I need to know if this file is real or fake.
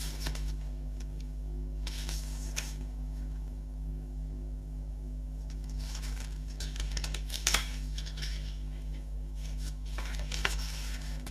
fake